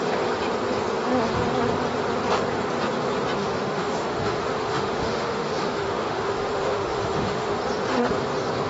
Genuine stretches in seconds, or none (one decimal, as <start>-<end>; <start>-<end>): 0.0-3.4; 7.6-8.7